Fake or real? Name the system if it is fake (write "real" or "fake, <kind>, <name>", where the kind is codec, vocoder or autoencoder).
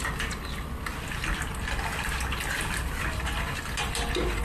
real